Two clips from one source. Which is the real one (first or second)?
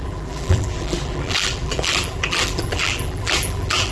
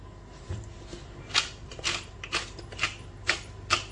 second